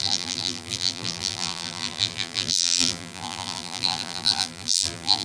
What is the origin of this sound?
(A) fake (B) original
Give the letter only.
A